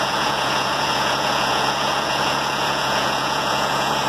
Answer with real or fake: fake